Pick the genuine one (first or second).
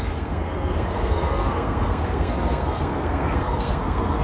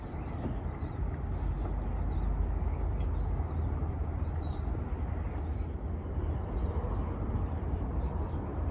second